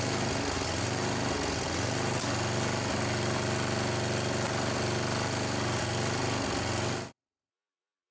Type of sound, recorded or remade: recorded